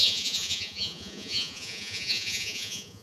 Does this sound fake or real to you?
fake